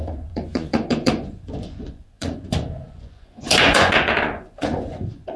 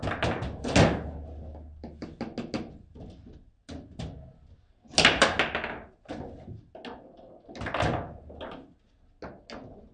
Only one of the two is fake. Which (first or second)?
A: first